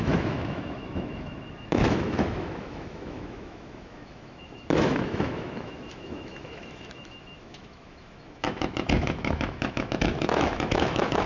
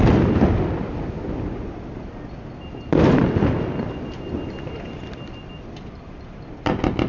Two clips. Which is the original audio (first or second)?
second